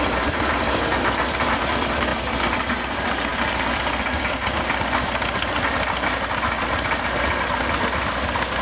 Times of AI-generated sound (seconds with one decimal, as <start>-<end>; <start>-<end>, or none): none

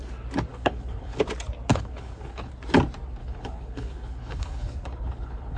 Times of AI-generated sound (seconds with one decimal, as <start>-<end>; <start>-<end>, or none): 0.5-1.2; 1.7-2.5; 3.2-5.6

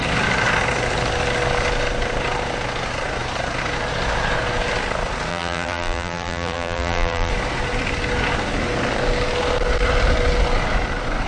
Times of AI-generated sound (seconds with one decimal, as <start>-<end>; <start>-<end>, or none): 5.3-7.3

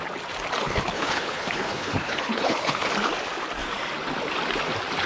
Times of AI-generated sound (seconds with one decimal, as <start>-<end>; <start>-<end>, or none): 0.6-2.9

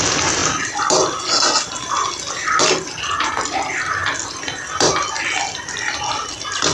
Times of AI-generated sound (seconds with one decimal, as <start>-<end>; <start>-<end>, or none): none